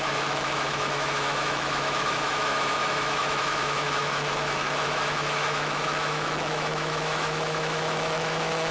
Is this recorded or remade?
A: remade